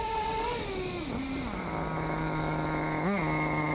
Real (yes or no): yes